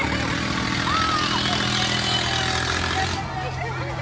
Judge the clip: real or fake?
real